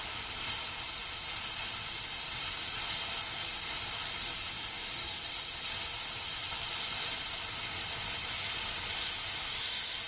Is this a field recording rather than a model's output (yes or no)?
yes